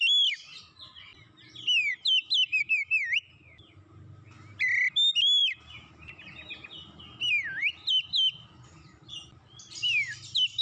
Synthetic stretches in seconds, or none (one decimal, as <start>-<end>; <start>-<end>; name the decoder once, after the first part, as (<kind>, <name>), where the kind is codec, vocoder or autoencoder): none